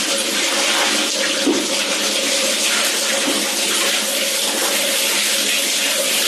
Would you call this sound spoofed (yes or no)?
no